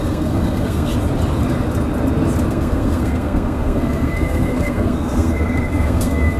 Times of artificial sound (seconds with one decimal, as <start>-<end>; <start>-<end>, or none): 0.0-0.9; 2.5-6.4